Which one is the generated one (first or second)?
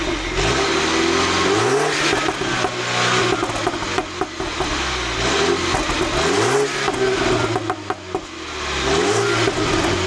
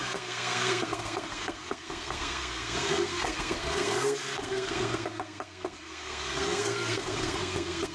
second